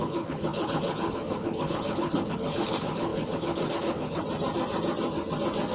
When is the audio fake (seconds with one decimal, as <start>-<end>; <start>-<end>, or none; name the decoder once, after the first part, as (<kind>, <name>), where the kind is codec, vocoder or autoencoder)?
0.0-4.2 (codec, HILCodec)